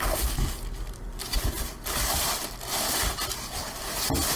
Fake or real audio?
real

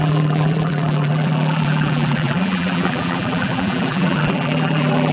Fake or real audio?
fake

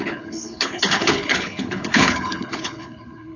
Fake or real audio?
fake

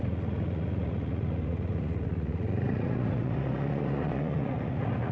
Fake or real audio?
fake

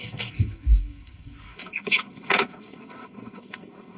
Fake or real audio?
fake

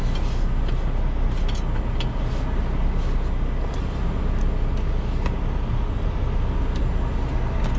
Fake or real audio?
real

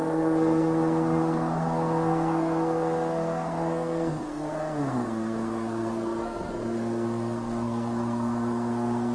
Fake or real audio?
fake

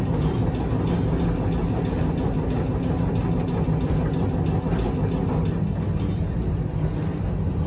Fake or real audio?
real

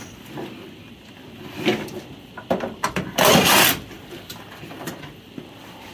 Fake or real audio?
fake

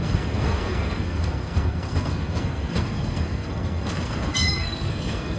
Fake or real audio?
fake